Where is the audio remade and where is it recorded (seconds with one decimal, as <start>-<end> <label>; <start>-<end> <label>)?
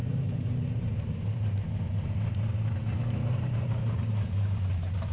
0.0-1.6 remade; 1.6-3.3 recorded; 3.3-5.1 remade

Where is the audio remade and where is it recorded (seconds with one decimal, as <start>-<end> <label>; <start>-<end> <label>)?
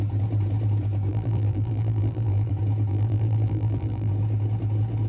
0.0-1.1 recorded; 1.1-2.5 remade; 2.5-2.9 recorded; 2.9-4.1 remade; 4.1-5.1 recorded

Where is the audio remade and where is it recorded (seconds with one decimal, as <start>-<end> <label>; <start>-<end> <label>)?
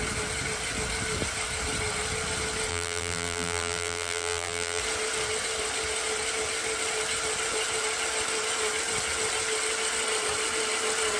0.0-2.7 recorded; 2.7-4.8 remade; 4.8-11.2 recorded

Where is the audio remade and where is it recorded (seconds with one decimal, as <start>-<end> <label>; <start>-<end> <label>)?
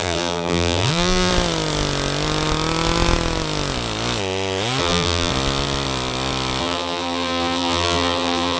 0.0-1.3 remade; 1.3-4.8 recorded; 4.8-5.3 remade; 5.3-6.6 recorded; 6.6-8.6 remade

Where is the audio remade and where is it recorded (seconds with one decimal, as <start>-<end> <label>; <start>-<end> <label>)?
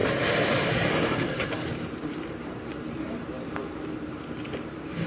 0.0-5.1 remade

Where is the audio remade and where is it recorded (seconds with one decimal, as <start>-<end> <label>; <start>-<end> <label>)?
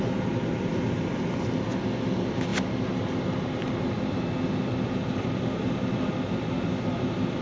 0.0-7.4 recorded